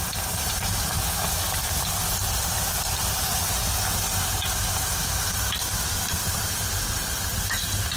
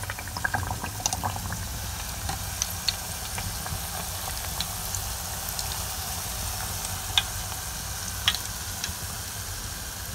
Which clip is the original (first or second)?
second